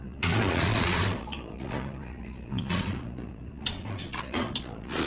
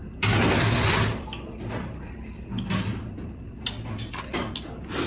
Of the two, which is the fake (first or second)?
first